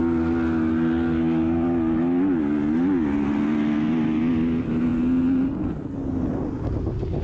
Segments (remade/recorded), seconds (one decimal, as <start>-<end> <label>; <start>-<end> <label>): 0.0-7.2 recorded